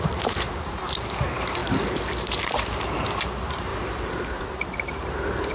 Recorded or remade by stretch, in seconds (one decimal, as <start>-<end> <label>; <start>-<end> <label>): 0.0-3.7 remade; 3.7-4.3 recorded; 4.3-5.5 remade